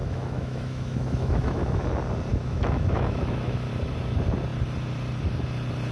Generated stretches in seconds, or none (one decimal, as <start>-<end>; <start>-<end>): 0.0-1.8; 2.3-3.7